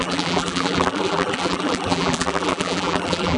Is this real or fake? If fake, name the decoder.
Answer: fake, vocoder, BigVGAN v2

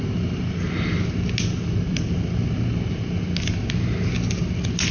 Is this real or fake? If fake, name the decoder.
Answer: real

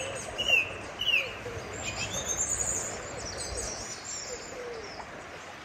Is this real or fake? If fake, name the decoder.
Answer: real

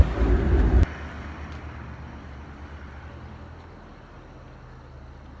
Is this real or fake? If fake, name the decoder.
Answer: real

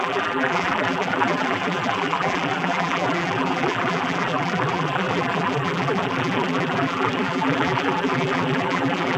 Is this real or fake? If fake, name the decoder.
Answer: fake, vocoder, BigVGAN v2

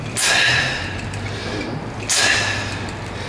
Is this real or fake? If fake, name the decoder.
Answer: real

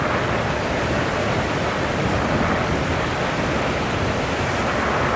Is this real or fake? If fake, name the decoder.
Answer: real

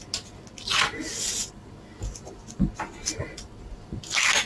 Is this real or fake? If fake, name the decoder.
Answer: real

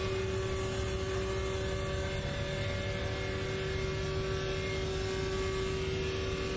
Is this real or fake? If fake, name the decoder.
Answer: real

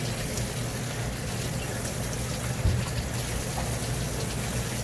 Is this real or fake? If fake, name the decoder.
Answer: real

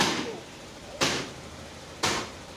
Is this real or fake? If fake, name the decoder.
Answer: fake, vocoder, BigVGAN v2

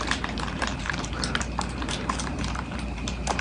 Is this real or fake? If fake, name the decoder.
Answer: fake, vocoder, BigVGAN v2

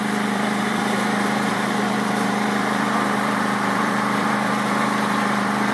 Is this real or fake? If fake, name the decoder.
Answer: fake, vocoder, BigVGAN v2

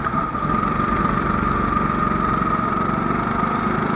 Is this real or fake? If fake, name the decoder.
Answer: real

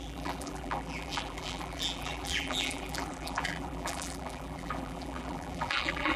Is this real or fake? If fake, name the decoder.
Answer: fake, vocoder, BigVGAN v2